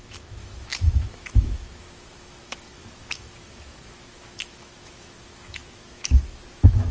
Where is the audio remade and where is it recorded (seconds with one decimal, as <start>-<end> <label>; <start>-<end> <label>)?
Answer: 0.0-6.9 remade